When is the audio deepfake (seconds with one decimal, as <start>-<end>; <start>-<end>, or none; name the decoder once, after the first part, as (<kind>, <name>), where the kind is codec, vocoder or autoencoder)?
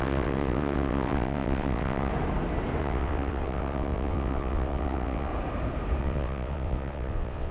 0.0-2.1 (vocoder, WaveNeXt); 2.8-5.3; 6.0-7.5